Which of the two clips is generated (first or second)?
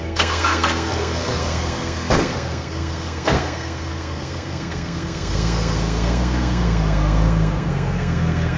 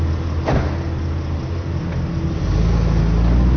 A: first